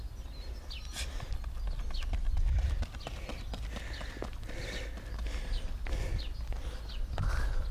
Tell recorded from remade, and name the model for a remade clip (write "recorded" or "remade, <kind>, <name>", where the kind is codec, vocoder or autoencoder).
recorded